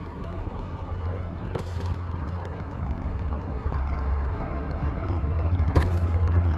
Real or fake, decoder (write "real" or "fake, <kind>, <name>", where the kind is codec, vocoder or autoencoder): fake, codec, SNAC